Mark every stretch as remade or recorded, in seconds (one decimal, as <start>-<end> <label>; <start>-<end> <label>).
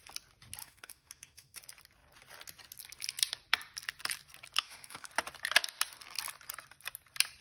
0.0-0.6 recorded; 0.6-1.6 remade; 1.6-4.6 recorded; 4.6-5.1 remade; 5.1-7.4 recorded